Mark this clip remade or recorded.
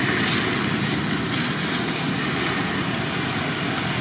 recorded